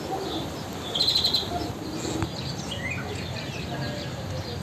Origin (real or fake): real